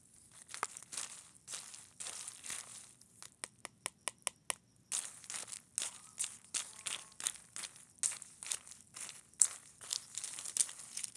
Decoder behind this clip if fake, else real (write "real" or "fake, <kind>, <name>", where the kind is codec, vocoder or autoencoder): real